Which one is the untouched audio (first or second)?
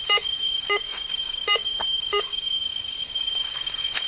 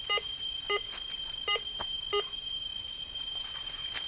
second